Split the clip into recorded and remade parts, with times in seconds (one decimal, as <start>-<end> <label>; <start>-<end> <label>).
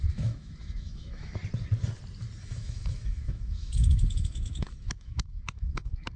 0.0-1.4 remade; 1.4-2.4 recorded; 2.4-6.2 remade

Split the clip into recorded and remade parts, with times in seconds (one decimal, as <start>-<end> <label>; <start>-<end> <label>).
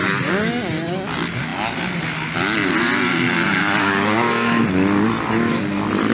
0.0-3.8 recorded; 3.8-4.6 remade; 4.6-6.1 recorded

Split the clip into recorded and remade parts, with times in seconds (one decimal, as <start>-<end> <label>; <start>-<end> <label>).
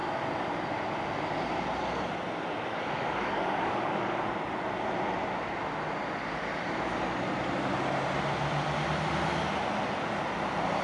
0.0-2.7 recorded; 2.7-4.2 remade; 4.2-10.8 recorded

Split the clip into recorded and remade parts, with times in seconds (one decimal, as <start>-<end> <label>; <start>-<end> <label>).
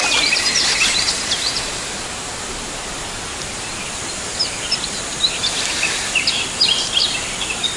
0.0-7.8 recorded